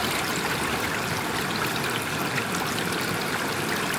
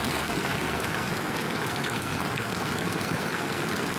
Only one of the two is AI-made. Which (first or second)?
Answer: second